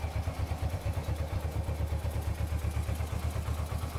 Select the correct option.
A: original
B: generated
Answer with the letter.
A